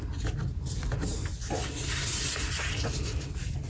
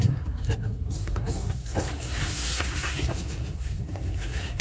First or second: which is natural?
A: first